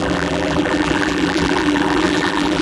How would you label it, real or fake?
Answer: fake